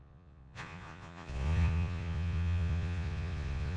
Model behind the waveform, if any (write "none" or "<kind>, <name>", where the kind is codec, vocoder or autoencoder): vocoder, Vocos